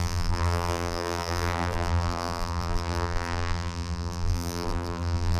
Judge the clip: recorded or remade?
remade